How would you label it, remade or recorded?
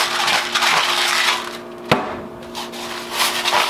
recorded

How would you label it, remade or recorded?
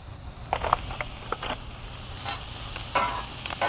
recorded